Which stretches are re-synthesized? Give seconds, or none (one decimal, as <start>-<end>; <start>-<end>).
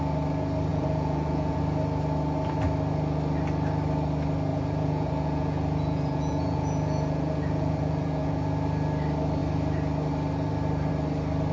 0.7-1.6; 4.5-8.3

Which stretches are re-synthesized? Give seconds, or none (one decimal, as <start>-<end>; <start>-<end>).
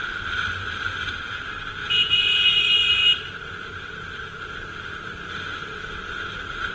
1.8-2.5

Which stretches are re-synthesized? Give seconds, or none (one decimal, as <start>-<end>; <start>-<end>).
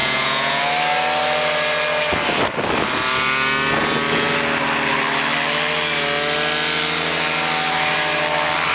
0.0-0.6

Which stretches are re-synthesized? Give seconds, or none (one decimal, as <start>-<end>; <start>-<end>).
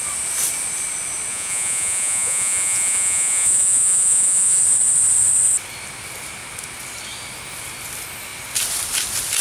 1.3-4.6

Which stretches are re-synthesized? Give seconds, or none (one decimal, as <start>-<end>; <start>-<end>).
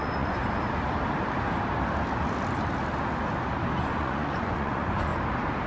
0.0-0.4; 3.8-5.1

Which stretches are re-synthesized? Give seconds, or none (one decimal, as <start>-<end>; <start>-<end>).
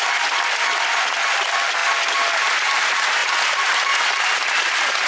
none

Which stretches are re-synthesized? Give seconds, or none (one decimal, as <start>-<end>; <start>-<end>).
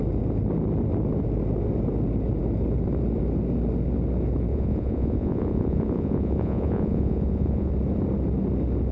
4.5-7.7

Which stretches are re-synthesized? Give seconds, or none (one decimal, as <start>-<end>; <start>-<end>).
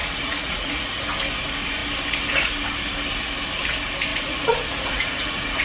0.0-0.8; 4.1-5.6